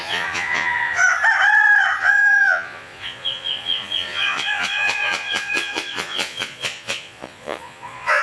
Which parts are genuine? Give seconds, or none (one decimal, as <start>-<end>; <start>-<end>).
1.0-2.0